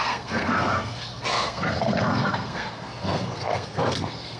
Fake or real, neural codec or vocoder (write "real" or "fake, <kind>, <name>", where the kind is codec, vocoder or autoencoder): fake, codec, SNAC